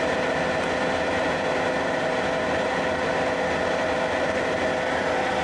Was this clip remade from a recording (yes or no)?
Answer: no